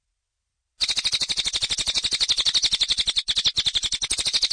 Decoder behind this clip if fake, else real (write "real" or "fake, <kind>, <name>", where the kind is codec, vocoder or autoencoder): real